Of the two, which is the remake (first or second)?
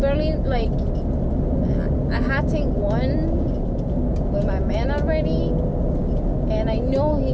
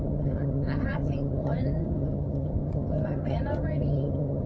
second